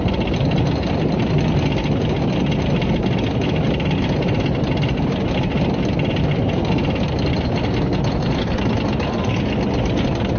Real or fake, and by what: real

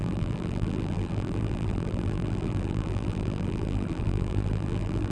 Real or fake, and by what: fake, vocoder, BigVGAN v2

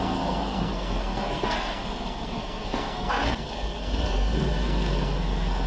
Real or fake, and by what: fake, codec, SNAC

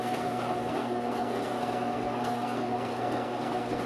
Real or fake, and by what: fake, codec, SNAC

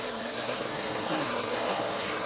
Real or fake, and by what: fake, codec, SNAC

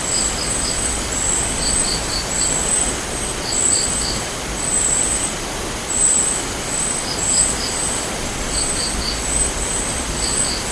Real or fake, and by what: real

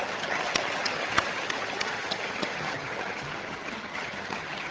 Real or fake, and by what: fake, vocoder, HiFi-GAN